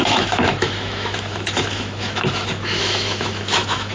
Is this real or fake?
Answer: fake